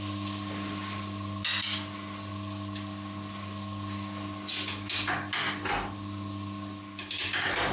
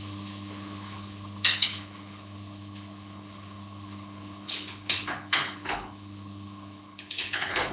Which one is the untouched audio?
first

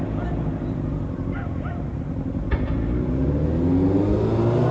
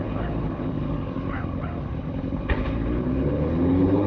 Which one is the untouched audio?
first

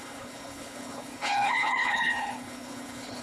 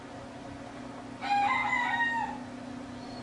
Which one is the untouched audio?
second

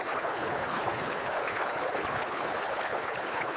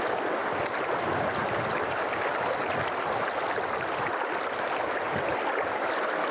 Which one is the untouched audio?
second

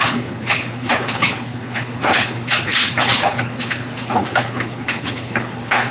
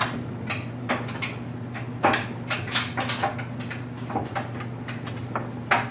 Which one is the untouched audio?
second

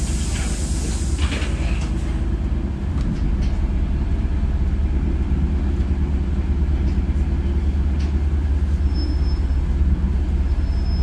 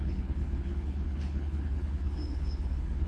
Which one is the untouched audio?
first